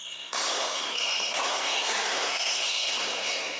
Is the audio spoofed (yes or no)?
yes